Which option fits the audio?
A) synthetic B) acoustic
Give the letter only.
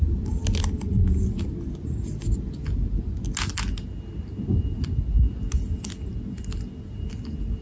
B